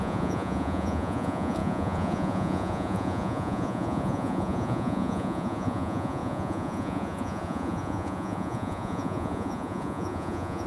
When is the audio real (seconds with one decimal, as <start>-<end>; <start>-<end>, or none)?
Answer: none